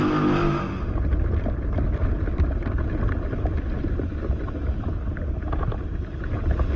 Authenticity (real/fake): real